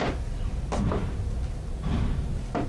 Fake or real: real